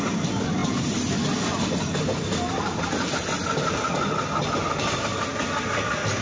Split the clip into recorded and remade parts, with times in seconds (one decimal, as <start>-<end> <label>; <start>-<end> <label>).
0.0-6.2 recorded